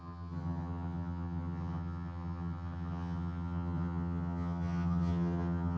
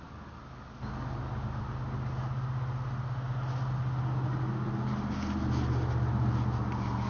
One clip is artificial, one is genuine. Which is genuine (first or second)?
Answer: second